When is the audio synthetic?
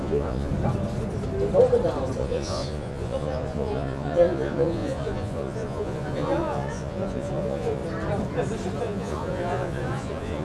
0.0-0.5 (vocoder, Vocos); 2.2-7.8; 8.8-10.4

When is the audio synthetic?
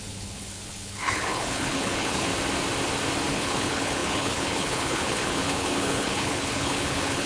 0.0-2.3 (codec, HILCodec); 3.3-7.3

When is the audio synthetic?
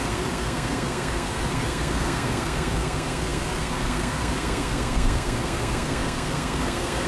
0.0-7.1 (codec, SNAC)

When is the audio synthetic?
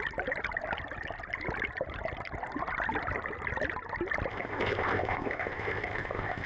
4.3-6.5 (codec, ZipCodec)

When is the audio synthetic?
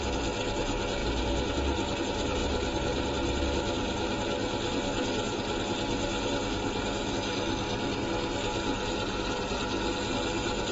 none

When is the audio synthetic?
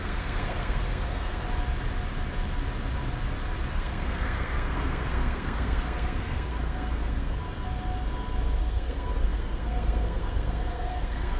0.0-1.4 (codec, SNAC); 3.7-7.4; 8.6-11.4